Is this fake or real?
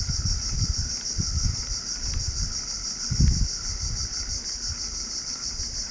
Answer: real